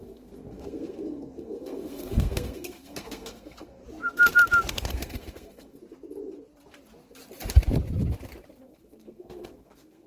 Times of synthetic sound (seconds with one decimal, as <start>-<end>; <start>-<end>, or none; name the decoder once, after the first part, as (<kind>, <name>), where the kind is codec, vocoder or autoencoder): 0.0-3.8 (codec, SNAC); 4.7-5.8; 8.6-10.1